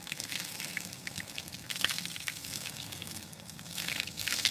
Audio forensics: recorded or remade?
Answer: remade